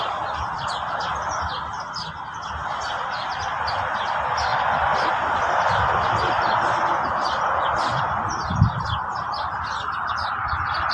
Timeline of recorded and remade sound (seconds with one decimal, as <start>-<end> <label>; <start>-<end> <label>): 0.0-10.9 recorded